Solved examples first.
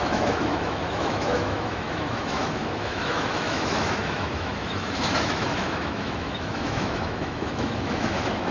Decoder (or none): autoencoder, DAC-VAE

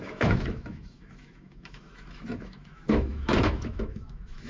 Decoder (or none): autoencoder, DAC-VAE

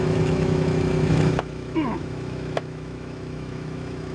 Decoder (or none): autoencoder, DAC-VAE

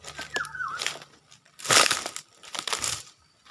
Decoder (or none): none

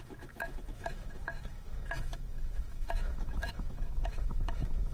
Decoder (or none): autoencoder, DAC-VAE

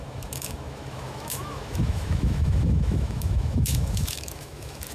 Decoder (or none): autoencoder, DAC-VAE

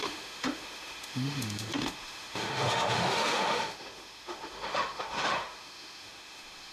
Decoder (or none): autoencoder, DAC-VAE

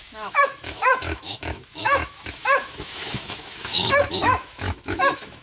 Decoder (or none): autoencoder, DAC-VAE